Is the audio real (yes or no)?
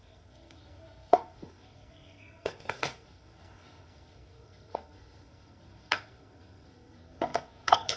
no